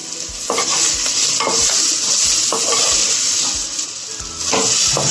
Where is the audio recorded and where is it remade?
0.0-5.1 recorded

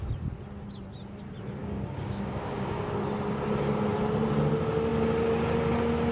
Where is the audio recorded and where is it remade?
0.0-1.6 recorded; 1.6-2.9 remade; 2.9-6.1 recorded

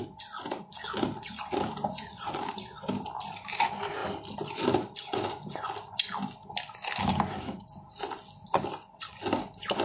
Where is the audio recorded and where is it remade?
0.0-7.0 recorded; 7.0-7.7 remade; 7.7-9.8 recorded